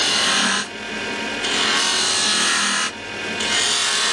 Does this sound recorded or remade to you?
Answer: recorded